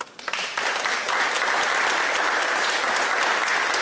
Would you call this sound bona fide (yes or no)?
yes